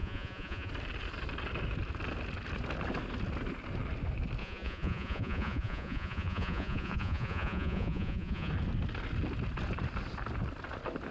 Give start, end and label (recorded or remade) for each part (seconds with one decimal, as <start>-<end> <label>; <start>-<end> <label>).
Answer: 0.0-0.7 remade; 0.7-4.4 recorded; 4.4-8.5 remade; 8.5-11.1 recorded